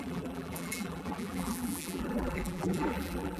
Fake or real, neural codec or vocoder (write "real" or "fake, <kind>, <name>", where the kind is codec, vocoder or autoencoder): fake, vocoder, BigVGAN v2